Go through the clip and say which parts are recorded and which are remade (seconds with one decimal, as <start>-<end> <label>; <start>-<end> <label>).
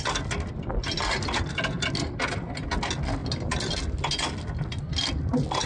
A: 0.0-5.7 recorded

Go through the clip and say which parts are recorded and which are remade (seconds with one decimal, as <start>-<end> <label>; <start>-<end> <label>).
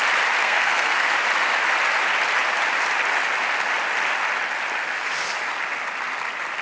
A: 0.0-0.4 recorded; 0.4-1.1 remade; 1.1-6.6 recorded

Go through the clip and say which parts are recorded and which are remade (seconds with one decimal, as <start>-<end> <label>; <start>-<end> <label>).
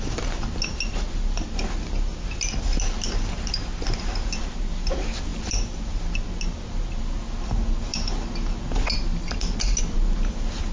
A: 0.0-10.7 recorded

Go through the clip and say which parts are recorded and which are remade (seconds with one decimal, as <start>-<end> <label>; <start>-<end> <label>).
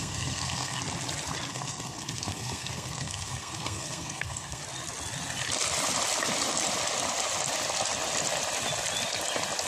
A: 0.0-0.8 remade; 0.8-1.5 recorded; 1.5-4.6 remade; 4.6-9.7 recorded